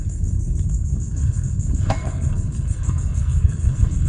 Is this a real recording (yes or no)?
no